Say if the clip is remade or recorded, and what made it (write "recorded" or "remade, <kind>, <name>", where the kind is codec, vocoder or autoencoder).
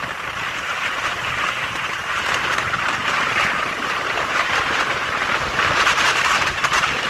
remade, vocoder, BigVGAN v2